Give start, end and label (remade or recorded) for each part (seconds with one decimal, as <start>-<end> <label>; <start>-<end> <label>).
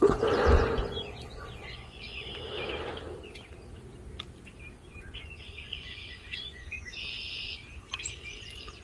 0.0-2.3 remade; 2.3-4.9 recorded; 4.9-7.6 remade; 7.6-8.1 recorded; 8.1-8.8 remade